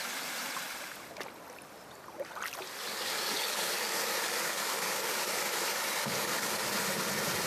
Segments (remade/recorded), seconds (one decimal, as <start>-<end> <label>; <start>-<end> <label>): 0.0-2.9 recorded; 2.9-6.7 remade; 6.7-7.5 recorded